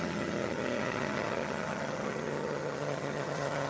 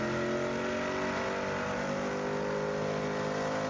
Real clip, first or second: second